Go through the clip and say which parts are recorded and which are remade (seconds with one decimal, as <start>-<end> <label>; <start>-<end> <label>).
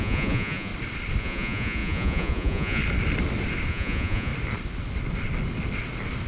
0.0-0.7 remade; 0.7-1.2 recorded; 1.2-2.8 remade; 2.8-3.7 recorded; 3.7-4.3 remade; 4.3-6.3 recorded